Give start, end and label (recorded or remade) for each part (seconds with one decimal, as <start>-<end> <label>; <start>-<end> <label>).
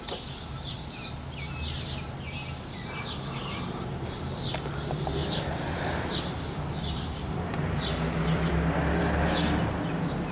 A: 0.0-5.2 recorded; 5.2-8.5 remade; 8.5-10.3 recorded